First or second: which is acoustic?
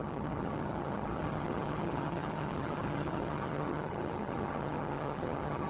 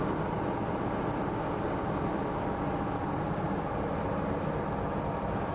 second